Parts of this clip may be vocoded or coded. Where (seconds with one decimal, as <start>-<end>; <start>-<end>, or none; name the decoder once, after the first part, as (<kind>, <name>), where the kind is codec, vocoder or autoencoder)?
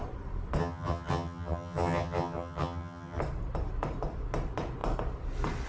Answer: 0.6-3.2 (vocoder, HiFi-GAN)